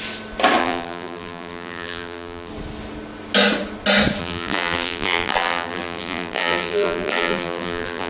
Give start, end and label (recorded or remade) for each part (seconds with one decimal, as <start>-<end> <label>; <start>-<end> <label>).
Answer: 0.0-0.6 recorded; 0.6-2.5 remade; 2.5-4.2 recorded; 4.2-8.1 remade